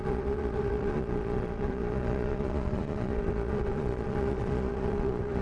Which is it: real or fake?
fake